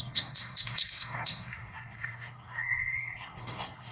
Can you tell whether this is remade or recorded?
remade